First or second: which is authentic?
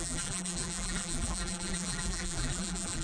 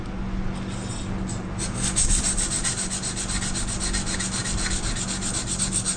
second